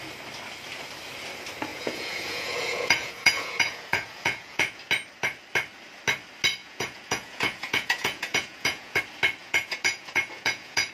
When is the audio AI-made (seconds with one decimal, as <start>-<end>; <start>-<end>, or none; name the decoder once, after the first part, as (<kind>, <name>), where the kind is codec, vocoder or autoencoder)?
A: 1.7-4.8 (vocoder, Vocos); 6.6-9.0; 9.4-10.9